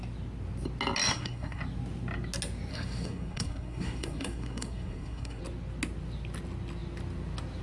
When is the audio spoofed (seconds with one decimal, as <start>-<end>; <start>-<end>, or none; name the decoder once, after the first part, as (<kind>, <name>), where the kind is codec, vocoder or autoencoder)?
1.1-1.6 (codec, SNAC); 2.7-5.4